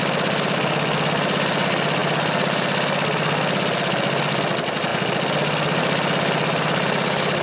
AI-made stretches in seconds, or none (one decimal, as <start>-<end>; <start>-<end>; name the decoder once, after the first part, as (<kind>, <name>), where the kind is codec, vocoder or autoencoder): none